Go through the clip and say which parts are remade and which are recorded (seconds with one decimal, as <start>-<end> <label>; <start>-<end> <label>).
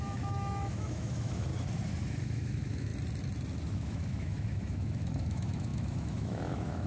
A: 0.0-1.5 remade; 1.5-2.2 recorded; 2.2-2.9 remade; 2.9-3.7 recorded; 3.7-6.9 remade